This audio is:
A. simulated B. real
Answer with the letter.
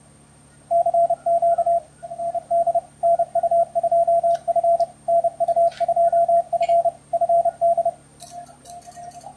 B